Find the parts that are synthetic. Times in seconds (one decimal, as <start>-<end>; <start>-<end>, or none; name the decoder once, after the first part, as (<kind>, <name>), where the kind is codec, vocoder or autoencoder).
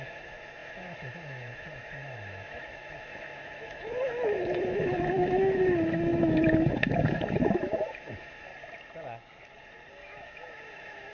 0.0-8.5 (autoencoder, DAC-VAE); 9.9-11.1